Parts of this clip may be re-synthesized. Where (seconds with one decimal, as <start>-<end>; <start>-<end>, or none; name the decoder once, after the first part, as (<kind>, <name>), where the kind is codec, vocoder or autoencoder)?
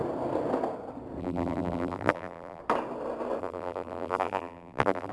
1.2-2.6 (vocoder, BigVGAN v2); 3.4-5.1